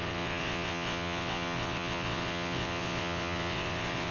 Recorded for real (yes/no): no